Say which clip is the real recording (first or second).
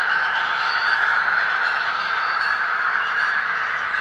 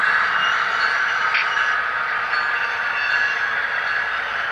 second